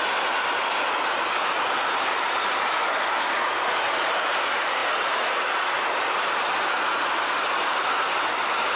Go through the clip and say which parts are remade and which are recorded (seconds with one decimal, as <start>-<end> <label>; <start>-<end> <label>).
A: 0.0-8.8 recorded